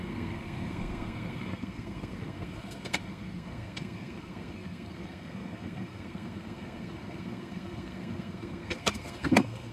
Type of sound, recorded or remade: remade